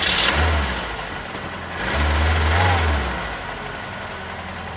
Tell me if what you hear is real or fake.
real